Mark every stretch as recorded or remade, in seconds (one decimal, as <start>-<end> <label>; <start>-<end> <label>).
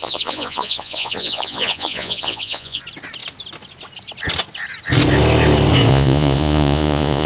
0.0-2.8 remade; 2.8-5.9 recorded; 5.9-7.3 remade